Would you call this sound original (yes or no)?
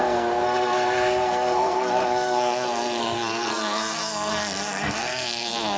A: no